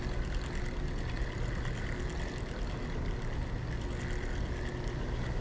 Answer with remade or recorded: recorded